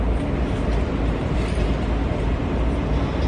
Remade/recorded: remade